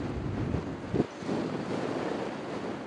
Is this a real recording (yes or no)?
yes